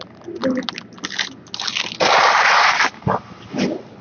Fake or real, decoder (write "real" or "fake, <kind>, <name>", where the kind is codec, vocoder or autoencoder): real